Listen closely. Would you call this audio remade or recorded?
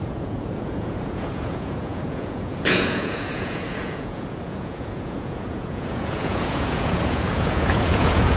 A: remade